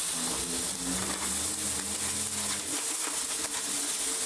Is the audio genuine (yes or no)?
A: yes